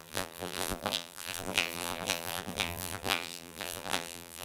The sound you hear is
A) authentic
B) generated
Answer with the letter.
B